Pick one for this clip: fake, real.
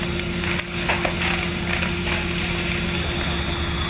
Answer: real